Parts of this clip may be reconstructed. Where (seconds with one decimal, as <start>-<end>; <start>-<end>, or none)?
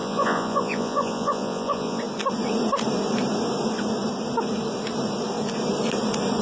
0.0-2.0